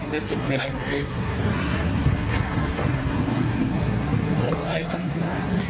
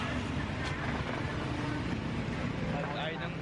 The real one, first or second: second